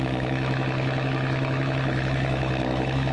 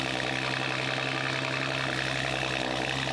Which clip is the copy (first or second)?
first